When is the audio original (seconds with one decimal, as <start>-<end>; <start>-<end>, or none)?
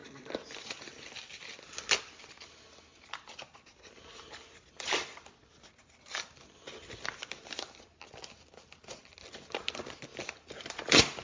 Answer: 0.0-11.2